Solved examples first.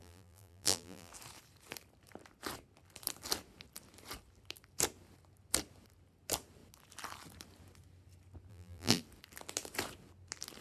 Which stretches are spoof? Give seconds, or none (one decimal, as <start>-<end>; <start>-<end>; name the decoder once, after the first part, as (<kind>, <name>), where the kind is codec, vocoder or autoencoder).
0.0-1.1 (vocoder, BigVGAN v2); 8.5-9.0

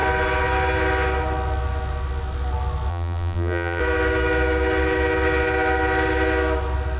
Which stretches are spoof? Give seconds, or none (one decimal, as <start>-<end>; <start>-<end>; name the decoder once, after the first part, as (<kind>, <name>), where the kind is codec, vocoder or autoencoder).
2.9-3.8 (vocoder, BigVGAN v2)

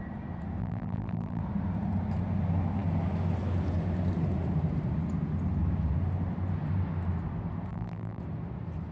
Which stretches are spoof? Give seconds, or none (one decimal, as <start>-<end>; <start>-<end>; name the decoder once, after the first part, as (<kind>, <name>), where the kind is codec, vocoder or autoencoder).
0.6-1.4 (vocoder, BigVGAN v2); 7.7-8.2

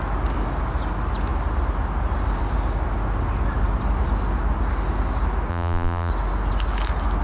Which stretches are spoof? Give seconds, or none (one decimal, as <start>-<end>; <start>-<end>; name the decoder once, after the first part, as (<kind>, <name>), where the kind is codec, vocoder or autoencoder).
5.5-6.1 (vocoder, BigVGAN v2)